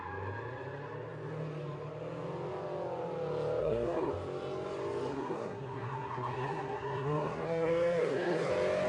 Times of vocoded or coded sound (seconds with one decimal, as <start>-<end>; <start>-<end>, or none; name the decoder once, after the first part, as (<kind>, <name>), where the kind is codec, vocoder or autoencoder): 3.6-4.1 (codec, SNAC); 5.1-8.5